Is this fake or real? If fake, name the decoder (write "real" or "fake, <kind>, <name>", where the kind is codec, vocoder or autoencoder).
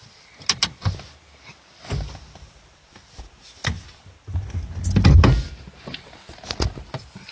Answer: real